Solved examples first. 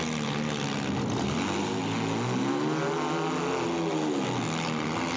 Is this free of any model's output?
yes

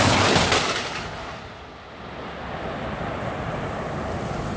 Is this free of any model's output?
yes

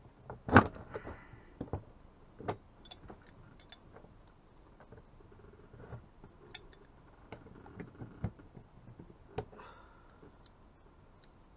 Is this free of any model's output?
yes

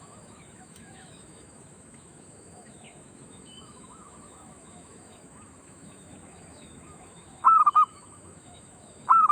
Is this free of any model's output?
no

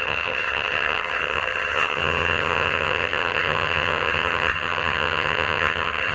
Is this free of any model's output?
no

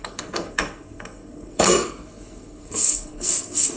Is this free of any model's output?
no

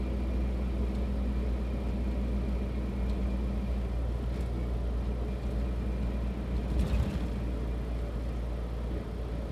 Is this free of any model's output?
yes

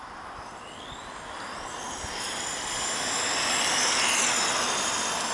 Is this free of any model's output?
yes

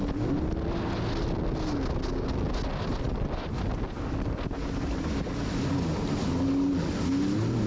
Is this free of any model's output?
yes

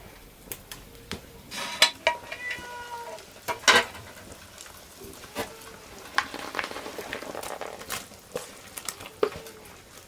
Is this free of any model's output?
yes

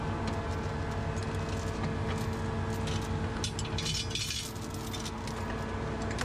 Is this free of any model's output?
yes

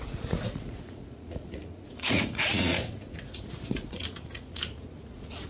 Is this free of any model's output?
no